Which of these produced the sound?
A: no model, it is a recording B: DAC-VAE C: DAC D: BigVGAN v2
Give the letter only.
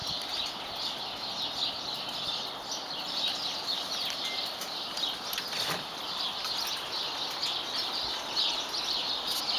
A